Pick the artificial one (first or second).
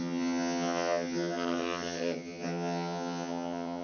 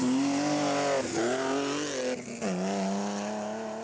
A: first